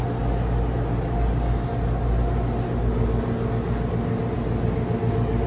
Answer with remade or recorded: recorded